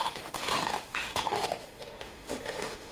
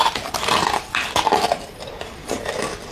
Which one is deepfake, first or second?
first